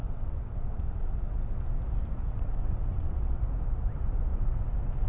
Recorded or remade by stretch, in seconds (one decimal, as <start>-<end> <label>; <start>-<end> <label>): 0.0-1.6 remade; 1.6-2.2 recorded; 2.2-3.4 remade; 3.4-4.3 recorded; 4.3-5.1 remade